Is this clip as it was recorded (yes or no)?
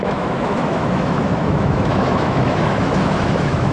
no